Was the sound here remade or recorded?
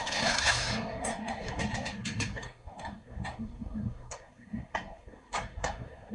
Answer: remade